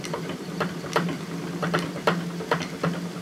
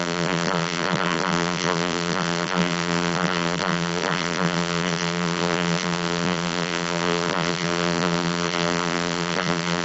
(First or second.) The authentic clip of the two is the first